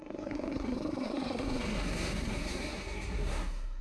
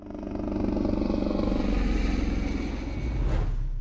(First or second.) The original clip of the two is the second